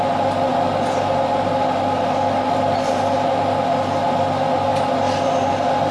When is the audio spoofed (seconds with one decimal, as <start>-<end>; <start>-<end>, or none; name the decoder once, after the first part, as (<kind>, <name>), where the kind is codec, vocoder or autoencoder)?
none